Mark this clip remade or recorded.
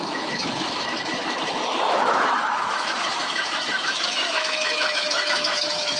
remade